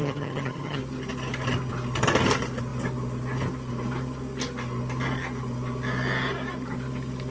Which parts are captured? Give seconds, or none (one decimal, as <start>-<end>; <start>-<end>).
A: 0.8-7.3